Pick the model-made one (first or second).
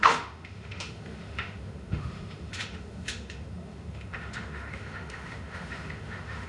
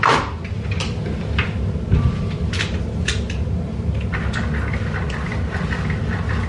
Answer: first